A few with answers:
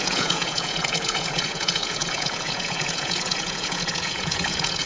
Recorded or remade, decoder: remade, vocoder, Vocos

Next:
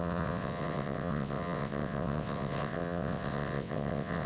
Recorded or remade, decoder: remade, vocoder, WaveNeXt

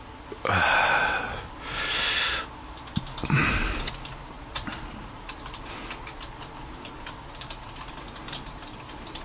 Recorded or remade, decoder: recorded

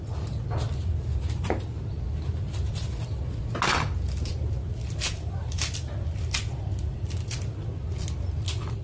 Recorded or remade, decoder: recorded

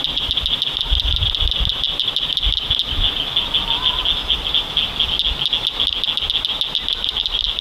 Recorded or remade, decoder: recorded